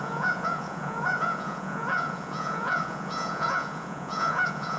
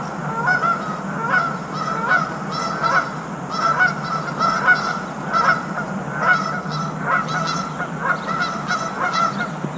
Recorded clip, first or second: second